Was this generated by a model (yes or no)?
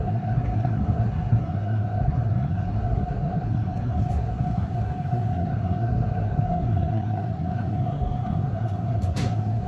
yes